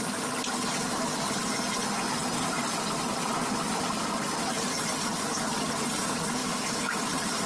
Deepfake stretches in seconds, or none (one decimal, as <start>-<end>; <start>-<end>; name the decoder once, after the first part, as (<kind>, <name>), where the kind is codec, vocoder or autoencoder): 6.4-7.0 (autoencoder, DAC-VAE)